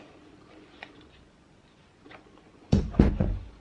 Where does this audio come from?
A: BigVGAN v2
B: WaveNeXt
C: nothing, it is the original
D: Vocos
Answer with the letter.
D